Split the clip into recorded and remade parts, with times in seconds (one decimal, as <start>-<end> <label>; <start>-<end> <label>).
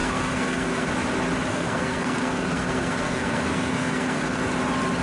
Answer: 0.0-0.9 remade; 0.9-1.5 recorded; 1.5-4.4 remade; 4.4-5.0 recorded